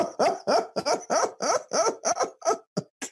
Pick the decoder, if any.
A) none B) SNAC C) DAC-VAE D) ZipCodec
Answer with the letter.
A